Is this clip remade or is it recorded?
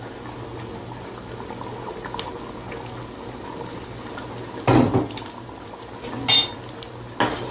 recorded